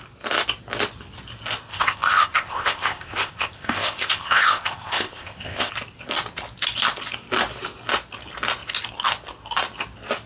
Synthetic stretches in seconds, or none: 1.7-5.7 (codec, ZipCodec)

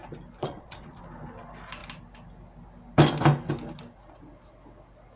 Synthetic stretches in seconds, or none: 0.4-1.0 (vocoder, Vocos)

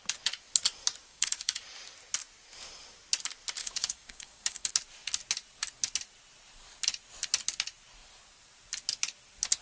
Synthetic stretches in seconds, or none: 1.0-1.6 (codec, DAC); 3.6-4.7

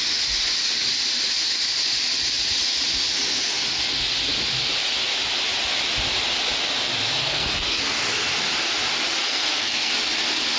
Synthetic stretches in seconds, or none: 7.2-7.8 (codec, SNAC); 9.2-9.9

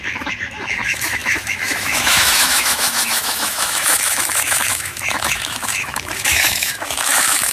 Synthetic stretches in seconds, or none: 0.0-7.5 (autoencoder, DAC-VAE)

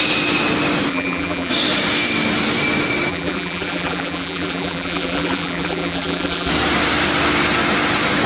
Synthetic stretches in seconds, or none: 0.9-1.5 (vocoder, BigVGAN v2); 3.1-6.5

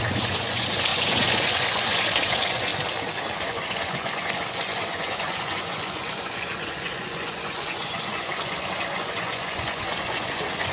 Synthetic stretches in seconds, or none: 0.0-2.7 (vocoder, Vocos); 3.4-10.7